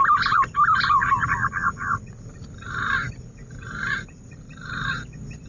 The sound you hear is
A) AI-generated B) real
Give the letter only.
B